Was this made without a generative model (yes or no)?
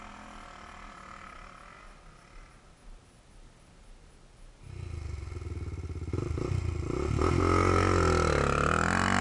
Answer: yes